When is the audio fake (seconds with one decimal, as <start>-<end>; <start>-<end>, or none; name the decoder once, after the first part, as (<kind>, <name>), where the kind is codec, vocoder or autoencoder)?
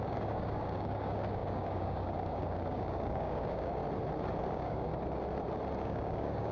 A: 0.0-3.8 (codec, DAC); 4.4-4.9; 5.8-6.5